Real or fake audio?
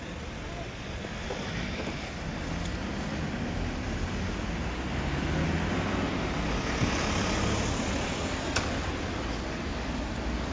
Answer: real